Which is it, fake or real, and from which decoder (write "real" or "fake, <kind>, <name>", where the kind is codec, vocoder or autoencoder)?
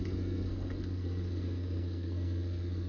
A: fake, codec, SNAC